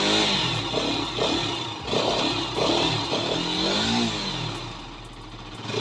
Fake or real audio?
real